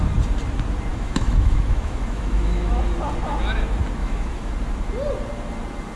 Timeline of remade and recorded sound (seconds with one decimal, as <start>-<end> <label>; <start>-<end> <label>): 0.0-0.9 recorded; 0.9-2.8 remade; 2.8-4.0 recorded; 4.0-4.5 remade; 4.5-6.0 recorded